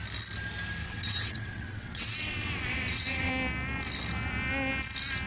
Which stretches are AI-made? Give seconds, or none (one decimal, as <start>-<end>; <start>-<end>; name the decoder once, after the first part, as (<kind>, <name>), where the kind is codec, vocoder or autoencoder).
0.8-3.3 (vocoder, WaveNeXt)